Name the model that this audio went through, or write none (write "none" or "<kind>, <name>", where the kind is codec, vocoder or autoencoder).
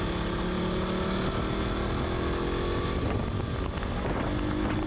none